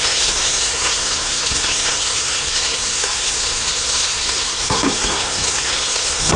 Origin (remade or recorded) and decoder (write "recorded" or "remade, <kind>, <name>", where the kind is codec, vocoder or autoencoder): remade, codec, SNAC